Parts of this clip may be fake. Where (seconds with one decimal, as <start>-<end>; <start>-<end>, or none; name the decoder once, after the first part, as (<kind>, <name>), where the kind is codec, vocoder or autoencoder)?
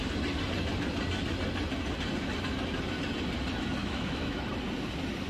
3.8-4.5 (autoencoder, DAC-VAE)